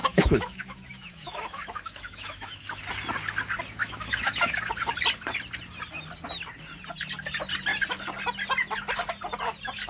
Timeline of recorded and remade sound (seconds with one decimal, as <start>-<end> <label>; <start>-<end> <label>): 0.0-2.8 remade; 2.8-3.8 recorded; 3.8-4.7 remade; 4.7-9.9 recorded